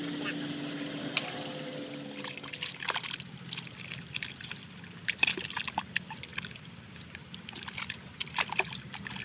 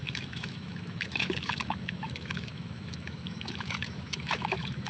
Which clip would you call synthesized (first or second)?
second